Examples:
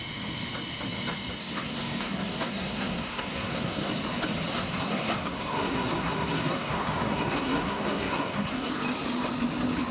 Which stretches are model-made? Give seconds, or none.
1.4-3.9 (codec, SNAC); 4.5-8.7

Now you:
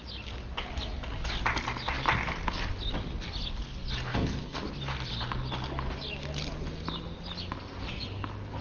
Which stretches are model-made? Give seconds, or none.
4.1-4.6 (codec, SNAC)